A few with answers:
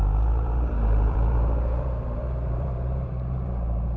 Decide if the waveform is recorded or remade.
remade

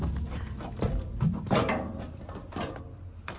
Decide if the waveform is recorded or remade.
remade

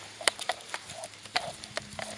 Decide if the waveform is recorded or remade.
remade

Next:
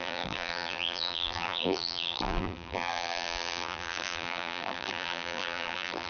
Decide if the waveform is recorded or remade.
remade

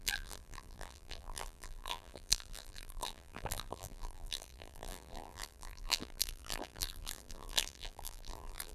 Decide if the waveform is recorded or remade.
remade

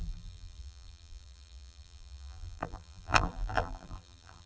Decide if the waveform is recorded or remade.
remade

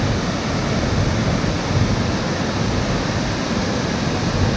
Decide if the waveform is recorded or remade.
recorded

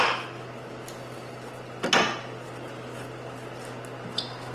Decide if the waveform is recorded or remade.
recorded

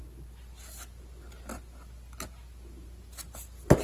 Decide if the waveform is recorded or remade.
recorded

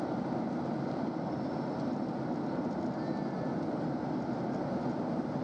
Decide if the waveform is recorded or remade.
recorded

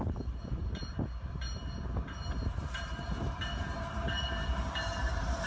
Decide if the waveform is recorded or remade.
remade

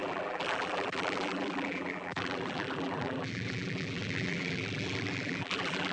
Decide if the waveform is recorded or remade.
remade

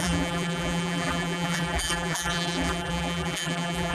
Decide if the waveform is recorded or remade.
remade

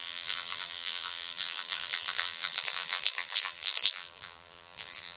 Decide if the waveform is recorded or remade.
remade